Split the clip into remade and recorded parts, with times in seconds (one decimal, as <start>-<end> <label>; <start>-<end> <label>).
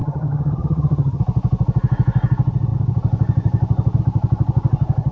0.0-1.2 remade; 1.2-5.1 recorded